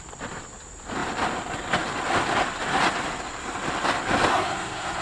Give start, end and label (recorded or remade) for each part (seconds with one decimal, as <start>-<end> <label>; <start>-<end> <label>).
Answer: 0.0-4.3 recorded; 4.3-5.0 remade